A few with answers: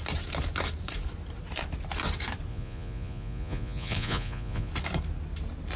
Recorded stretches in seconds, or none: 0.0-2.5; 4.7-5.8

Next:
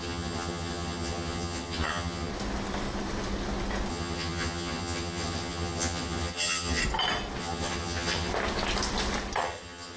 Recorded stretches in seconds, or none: 2.3-3.9; 6.8-7.4; 8.3-9.4

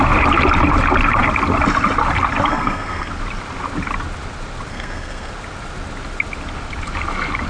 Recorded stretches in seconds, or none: 0.0-2.5; 3.1-4.7; 5.3-7.5

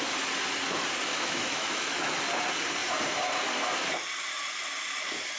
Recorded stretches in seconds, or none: 0.0-1.1; 2.2-5.4

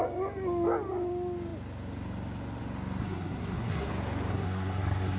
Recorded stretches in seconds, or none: 0.0-3.0; 3.9-4.3

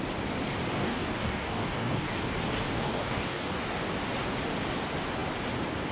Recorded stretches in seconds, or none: 0.0-0.8; 2.2-2.7; 3.6-5.9

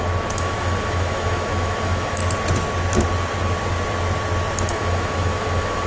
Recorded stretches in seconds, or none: 2.2-4.7